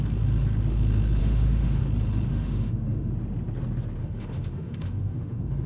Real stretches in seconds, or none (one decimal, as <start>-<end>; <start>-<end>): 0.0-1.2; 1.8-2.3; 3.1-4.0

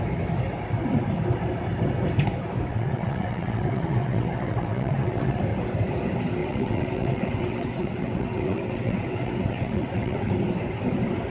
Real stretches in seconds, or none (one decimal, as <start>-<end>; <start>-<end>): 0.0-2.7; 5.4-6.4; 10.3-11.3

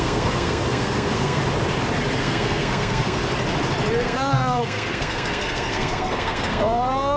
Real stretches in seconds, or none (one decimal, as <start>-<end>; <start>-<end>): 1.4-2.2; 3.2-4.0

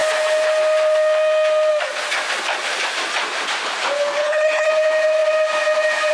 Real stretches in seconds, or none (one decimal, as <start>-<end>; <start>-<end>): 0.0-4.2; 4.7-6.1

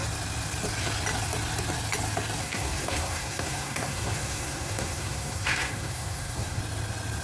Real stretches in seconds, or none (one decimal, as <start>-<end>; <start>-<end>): 0.0-2.4; 6.6-7.2